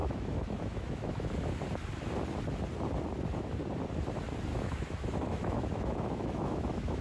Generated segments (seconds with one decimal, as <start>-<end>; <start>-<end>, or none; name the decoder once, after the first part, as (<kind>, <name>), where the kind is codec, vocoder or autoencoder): 0.0-1.3 (autoencoder, DAC-VAE); 4.5-7.0